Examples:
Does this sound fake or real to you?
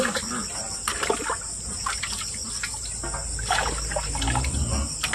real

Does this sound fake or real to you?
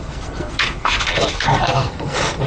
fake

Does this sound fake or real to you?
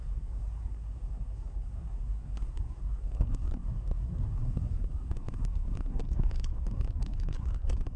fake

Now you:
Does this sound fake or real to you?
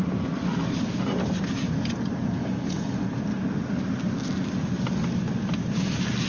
real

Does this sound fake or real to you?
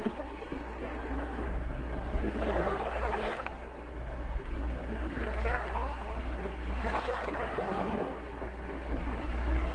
fake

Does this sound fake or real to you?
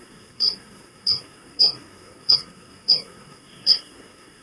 fake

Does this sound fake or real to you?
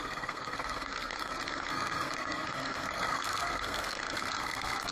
fake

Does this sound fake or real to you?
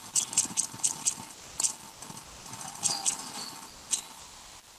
real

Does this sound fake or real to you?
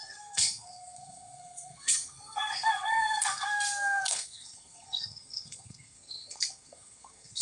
fake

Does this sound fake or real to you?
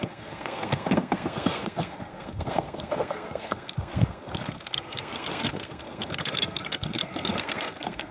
fake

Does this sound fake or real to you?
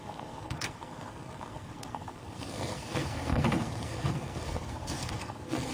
fake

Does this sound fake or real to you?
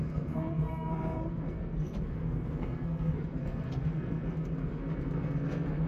fake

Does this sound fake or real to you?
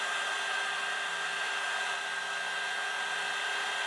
real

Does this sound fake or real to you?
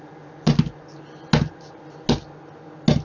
real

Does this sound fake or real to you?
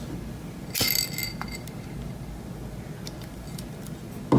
real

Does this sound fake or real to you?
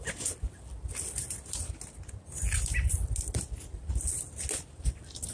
real